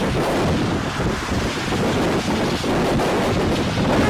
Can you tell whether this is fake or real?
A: real